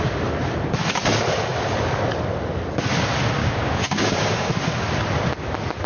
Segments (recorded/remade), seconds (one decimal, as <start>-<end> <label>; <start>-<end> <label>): 0.0-3.4 recorded; 3.4-4.5 remade; 4.5-5.9 recorded